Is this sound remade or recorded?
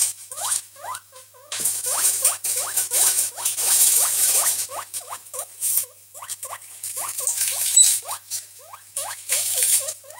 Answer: remade